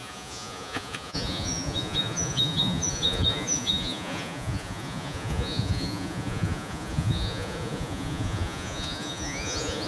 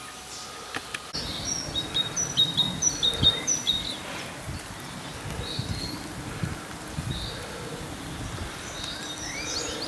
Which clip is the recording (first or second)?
second